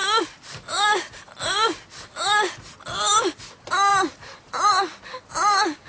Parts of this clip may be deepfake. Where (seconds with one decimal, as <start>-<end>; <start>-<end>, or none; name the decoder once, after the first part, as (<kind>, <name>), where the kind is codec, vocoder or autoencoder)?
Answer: none